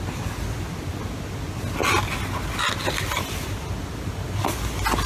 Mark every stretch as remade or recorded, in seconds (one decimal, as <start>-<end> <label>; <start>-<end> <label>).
0.0-5.1 recorded